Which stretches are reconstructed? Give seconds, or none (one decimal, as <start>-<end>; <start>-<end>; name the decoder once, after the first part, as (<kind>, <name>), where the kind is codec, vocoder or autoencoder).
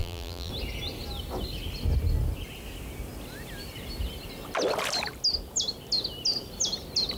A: 0.0-0.5 (vocoder, BigVGAN v2)